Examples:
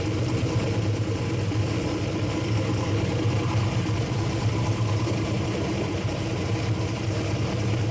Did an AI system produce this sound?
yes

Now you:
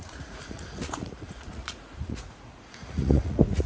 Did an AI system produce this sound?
yes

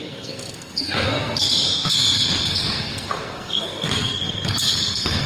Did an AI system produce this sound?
yes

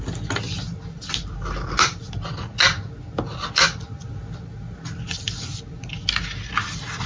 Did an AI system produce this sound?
no